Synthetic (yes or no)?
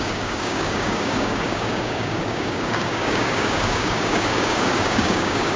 yes